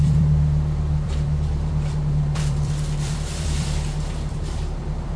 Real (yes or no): no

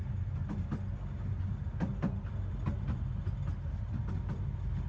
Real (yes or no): yes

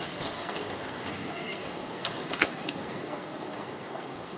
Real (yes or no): no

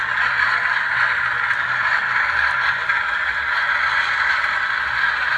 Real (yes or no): yes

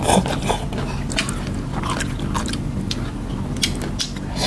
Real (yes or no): yes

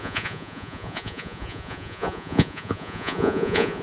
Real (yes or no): no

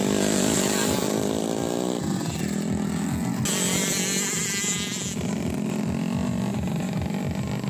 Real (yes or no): yes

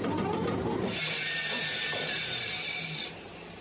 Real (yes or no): yes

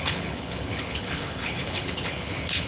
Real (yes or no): no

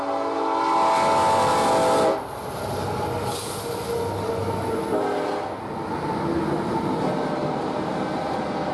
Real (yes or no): yes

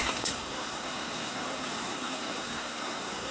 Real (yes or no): no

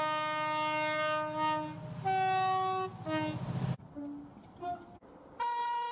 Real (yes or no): yes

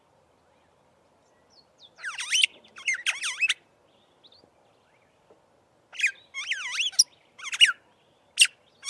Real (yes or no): yes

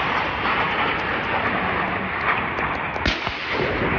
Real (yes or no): yes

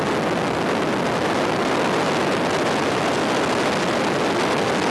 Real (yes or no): yes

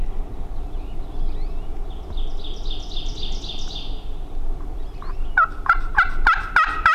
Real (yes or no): yes